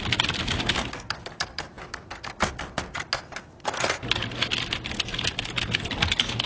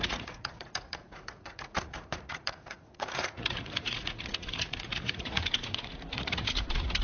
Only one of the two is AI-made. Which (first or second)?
second